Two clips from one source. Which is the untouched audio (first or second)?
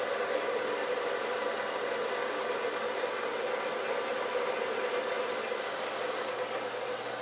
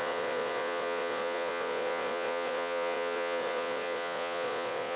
first